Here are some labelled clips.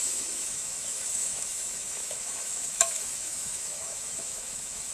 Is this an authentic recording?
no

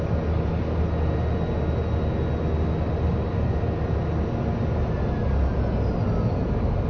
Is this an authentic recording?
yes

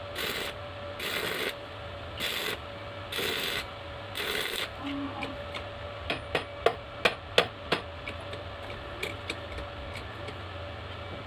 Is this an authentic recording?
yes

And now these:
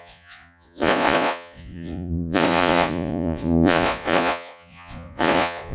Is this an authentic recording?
no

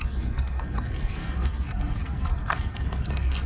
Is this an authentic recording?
no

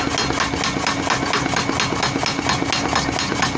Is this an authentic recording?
yes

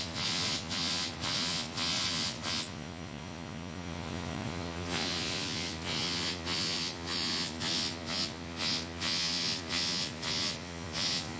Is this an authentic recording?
no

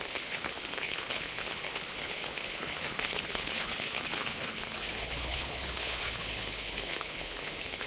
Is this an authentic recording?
no